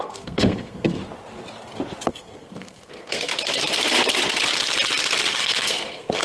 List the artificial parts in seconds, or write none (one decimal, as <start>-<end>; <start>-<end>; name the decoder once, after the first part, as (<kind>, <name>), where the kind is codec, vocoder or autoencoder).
0.0-1.0 (codec, SNAC); 2.1-3.3; 5.4-6.2